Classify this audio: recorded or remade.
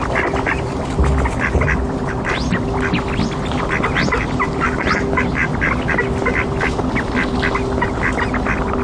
recorded